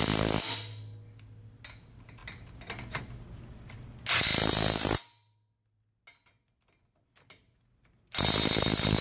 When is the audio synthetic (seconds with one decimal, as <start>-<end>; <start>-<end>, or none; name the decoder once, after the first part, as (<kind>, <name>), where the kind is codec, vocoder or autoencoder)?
none